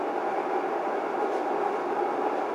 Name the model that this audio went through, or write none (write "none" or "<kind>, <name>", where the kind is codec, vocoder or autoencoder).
none